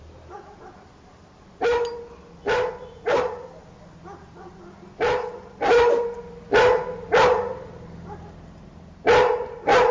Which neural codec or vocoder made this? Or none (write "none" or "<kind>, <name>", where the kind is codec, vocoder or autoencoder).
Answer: none